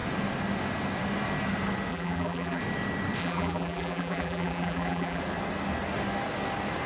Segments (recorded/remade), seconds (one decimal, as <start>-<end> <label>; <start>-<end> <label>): 0.0-1.9 recorded; 1.9-2.6 remade; 2.6-3.2 recorded; 3.2-5.2 remade; 5.2-6.9 recorded